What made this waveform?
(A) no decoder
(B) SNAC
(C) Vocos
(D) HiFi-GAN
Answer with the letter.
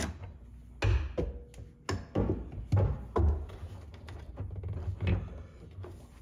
A